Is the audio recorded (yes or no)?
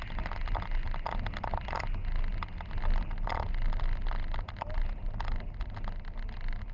yes